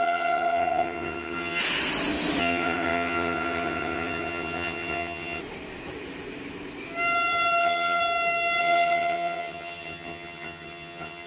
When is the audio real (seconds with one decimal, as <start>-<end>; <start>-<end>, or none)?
1.6-2.4; 5.4-7.6; 8.0-8.6

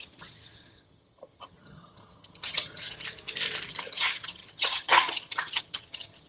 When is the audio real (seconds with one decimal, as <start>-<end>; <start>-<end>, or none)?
2.9-3.7

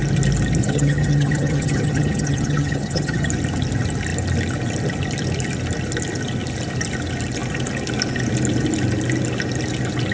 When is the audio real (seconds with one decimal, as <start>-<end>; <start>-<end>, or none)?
0.0-0.6; 3.3-10.1